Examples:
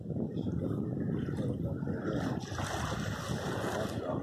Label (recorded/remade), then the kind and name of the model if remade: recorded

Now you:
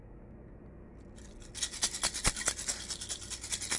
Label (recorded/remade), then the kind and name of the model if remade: recorded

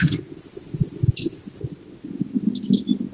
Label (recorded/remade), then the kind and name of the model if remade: recorded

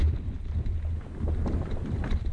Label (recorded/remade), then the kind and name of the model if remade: recorded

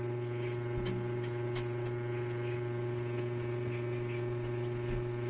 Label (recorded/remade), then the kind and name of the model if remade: recorded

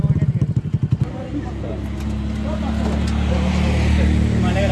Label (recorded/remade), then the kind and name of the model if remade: recorded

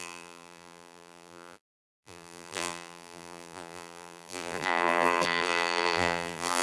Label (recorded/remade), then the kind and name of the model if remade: remade, vocoder, BigVGAN v2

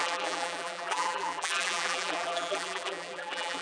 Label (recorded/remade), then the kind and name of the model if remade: remade, vocoder, BigVGAN v2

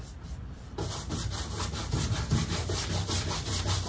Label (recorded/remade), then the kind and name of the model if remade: remade, vocoder, BigVGAN v2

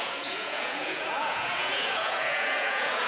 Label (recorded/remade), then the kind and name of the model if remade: remade, vocoder, Vocos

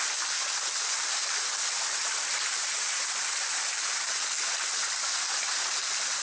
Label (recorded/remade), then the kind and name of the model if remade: recorded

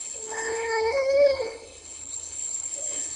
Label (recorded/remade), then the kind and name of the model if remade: remade, codec, HILCodec